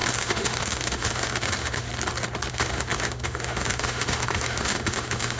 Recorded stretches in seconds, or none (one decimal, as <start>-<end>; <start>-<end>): 1.9-2.5